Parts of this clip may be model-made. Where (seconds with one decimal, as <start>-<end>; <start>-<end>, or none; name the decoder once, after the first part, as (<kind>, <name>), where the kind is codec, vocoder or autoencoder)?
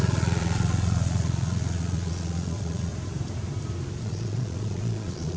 0.0-2.9 (vocoder, Vocos); 4.0-5.4